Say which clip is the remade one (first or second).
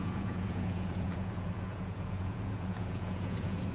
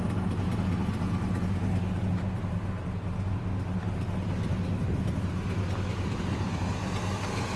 first